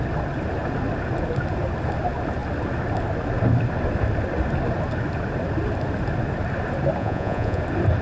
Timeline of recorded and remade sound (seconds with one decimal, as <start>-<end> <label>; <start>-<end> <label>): 0.0-7.0 recorded; 7.0-7.6 remade; 7.6-8.0 recorded